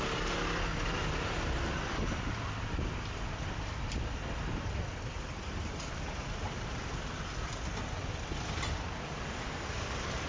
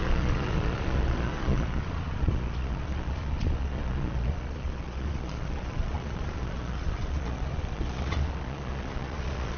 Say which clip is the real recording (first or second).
first